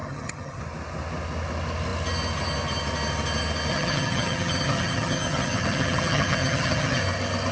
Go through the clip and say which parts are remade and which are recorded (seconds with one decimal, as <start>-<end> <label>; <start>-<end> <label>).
0.0-0.6 remade; 0.6-3.7 recorded; 3.7-7.0 remade; 7.0-7.5 recorded